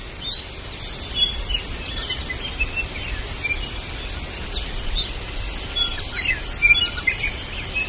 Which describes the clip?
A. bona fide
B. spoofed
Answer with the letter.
A